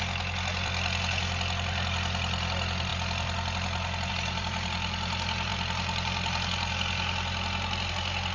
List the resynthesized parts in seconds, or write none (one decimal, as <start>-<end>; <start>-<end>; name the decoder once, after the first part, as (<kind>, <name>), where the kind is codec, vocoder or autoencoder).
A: none